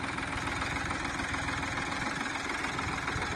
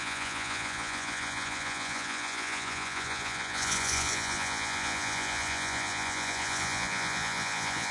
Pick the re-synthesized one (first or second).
second